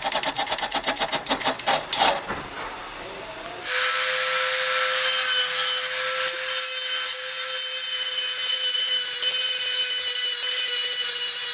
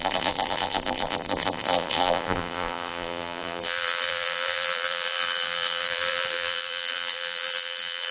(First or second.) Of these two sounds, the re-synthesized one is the second